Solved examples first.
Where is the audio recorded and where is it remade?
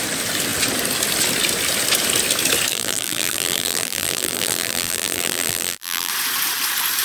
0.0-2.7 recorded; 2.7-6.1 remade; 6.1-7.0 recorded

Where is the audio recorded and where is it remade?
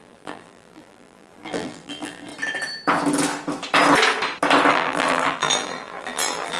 0.0-2.3 remade; 2.3-4.7 recorded; 4.7-6.6 remade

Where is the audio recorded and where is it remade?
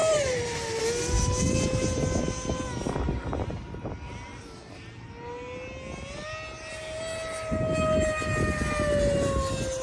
0.0-0.8 remade; 0.8-4.3 recorded; 4.3-5.1 remade; 5.1-9.8 recorded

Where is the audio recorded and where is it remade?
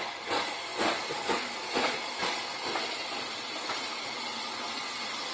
0.0-0.7 remade; 0.7-2.6 recorded; 2.6-5.3 remade